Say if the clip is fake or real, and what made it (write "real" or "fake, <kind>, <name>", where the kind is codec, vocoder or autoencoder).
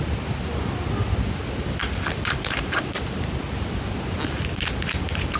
real